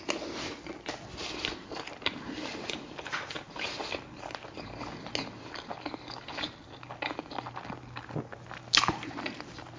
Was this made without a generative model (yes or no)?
yes